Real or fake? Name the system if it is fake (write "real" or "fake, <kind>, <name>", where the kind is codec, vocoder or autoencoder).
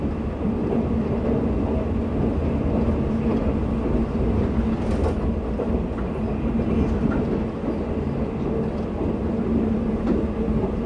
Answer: real